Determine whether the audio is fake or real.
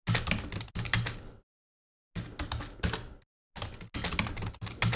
real